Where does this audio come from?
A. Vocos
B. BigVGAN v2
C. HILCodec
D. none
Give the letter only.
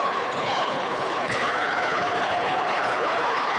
C